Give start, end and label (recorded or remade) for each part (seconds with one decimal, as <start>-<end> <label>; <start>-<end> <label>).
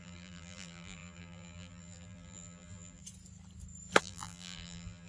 0.0-3.0 remade; 3.0-4.0 recorded; 4.0-5.1 remade